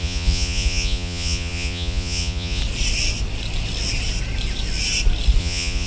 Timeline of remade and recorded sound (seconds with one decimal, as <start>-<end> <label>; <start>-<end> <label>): 0.0-2.6 remade; 2.6-5.4 recorded; 5.4-5.9 remade